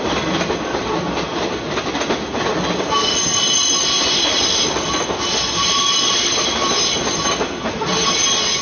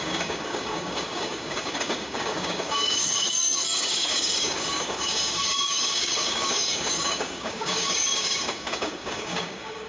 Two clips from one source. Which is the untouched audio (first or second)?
first